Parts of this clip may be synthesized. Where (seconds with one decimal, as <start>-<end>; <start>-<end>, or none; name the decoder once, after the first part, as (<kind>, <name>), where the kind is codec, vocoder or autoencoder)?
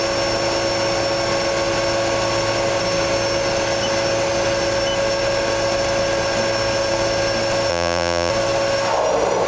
7.7-8.3 (vocoder, BigVGAN v2)